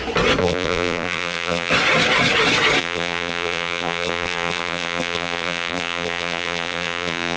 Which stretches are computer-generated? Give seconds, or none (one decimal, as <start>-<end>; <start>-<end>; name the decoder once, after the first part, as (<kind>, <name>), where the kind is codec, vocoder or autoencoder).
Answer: 0.4-1.7 (vocoder, BigVGAN v2); 2.8-7.4